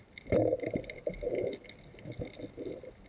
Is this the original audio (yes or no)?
yes